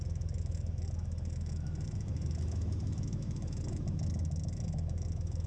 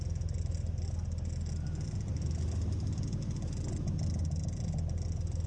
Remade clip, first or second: first